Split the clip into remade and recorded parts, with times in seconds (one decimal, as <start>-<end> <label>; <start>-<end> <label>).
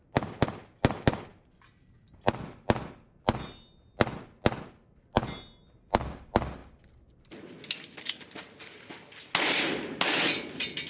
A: 0.0-10.9 recorded